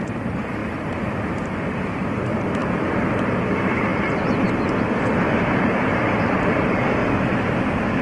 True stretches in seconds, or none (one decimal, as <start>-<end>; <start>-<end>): 2.6-3.1; 7.0-8.0